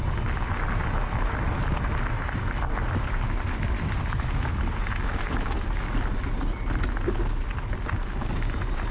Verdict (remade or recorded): recorded